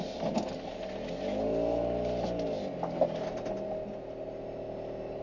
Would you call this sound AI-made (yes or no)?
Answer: no